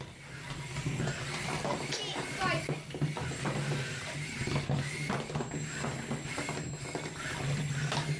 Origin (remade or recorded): recorded